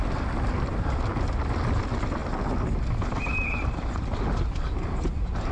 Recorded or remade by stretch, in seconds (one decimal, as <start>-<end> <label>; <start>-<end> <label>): 0.0-5.5 recorded